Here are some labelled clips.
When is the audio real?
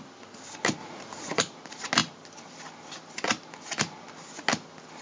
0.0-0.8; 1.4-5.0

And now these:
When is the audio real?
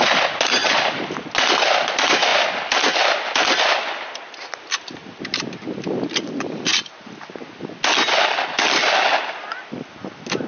0.0-0.6; 1.3-10.5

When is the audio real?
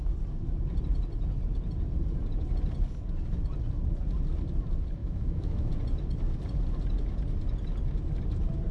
0.0-5.0; 5.7-8.7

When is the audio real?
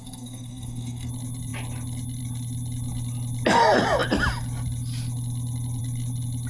1.1-6.5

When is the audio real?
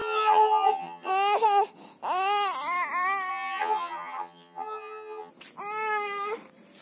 1.1-3.3; 5.3-6.8